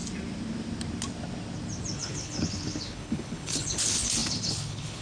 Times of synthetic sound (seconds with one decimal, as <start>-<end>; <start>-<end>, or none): 2.0-5.0